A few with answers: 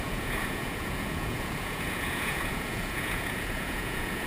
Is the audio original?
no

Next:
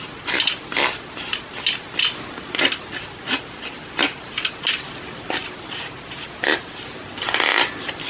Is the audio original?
yes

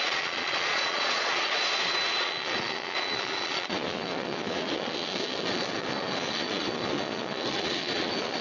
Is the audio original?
no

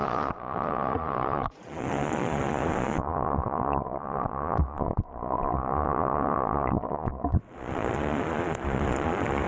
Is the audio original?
no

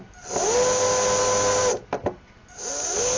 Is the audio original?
yes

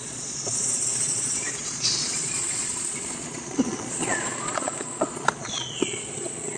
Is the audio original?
no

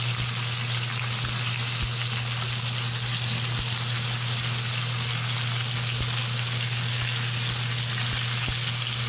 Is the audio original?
yes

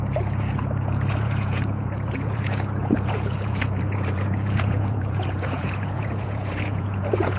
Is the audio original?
no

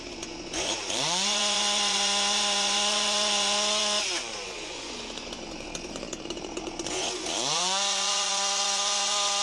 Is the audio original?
no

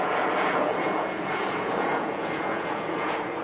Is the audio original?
no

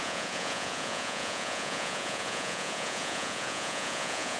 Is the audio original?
no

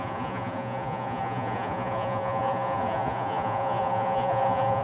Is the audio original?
no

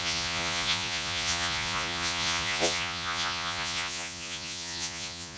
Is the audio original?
no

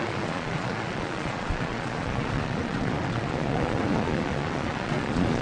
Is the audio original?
no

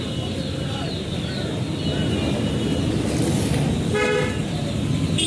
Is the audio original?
yes